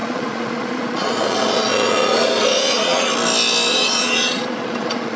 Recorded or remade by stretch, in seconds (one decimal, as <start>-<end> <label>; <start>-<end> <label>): 0.0-3.1 remade; 3.1-3.7 recorded; 3.7-5.2 remade